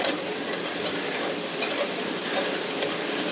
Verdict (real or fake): real